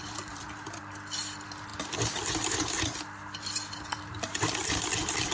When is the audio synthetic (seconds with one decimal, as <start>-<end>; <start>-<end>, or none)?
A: 0.0-0.7